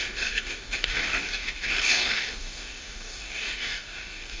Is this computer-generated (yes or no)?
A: yes